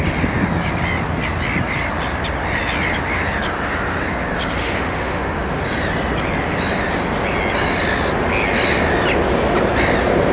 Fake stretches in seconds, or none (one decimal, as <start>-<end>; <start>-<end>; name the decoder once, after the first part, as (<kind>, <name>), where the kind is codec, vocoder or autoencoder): 4.6-5.6 (autoencoder, DAC-VAE)